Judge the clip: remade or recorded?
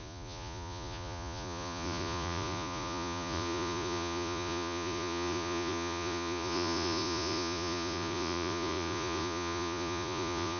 remade